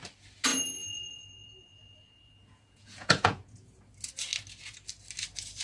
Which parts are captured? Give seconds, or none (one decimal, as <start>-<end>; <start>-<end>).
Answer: 0.0-0.5; 3.9-5.6